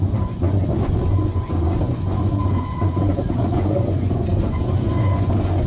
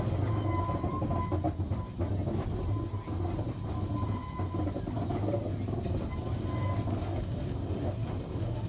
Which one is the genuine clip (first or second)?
second